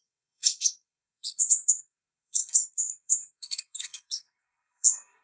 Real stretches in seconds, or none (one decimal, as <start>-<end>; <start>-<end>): none